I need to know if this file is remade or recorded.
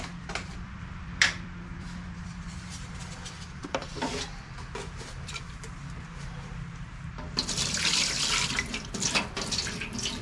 remade